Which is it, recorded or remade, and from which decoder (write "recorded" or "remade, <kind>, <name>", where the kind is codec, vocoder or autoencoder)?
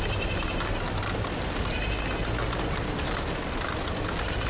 recorded